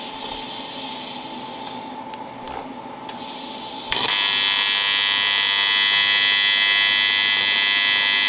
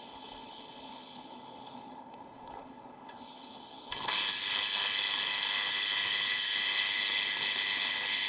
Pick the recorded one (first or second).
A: first